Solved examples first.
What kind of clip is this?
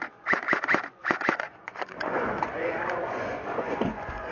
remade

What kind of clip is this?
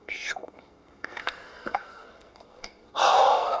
remade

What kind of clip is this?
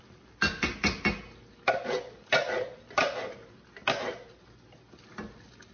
recorded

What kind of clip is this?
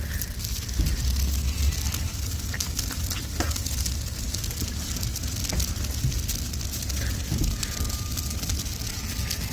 recorded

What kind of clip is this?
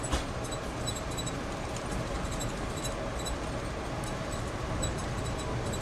recorded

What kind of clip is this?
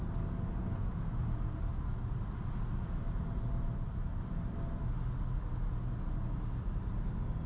recorded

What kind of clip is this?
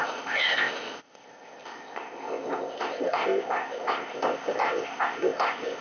remade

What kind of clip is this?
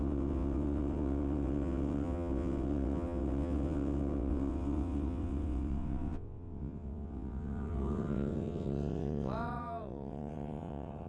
remade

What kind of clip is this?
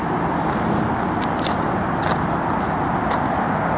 recorded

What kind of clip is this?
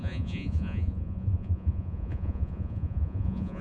remade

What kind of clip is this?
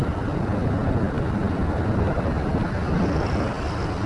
recorded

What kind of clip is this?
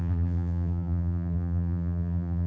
remade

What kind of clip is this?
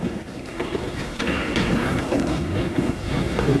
remade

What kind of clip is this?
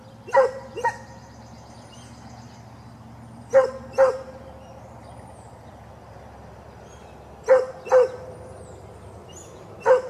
recorded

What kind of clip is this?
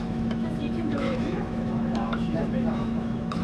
remade